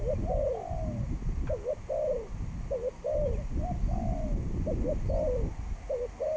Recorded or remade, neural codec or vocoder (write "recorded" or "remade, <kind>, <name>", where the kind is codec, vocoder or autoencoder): recorded